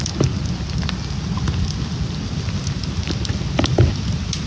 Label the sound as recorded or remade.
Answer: recorded